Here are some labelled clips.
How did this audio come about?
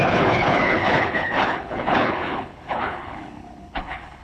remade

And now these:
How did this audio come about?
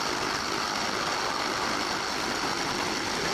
recorded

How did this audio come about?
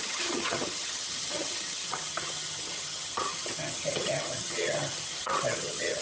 remade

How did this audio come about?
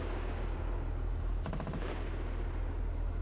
recorded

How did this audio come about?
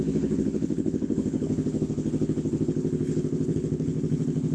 remade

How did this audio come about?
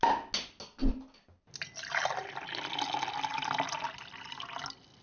recorded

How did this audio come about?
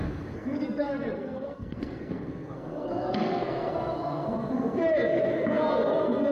remade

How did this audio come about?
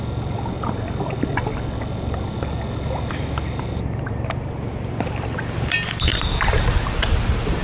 recorded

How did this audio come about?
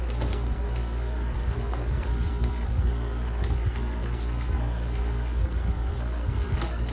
remade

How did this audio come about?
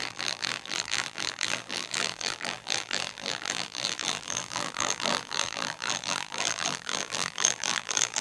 remade